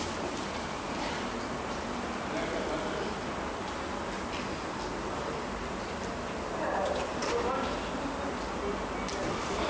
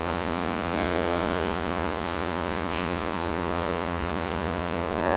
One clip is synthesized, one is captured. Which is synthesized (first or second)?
second